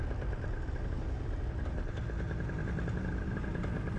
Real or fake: real